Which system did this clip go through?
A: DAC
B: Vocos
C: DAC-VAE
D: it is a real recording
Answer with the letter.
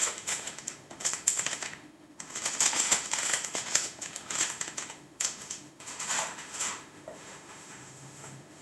C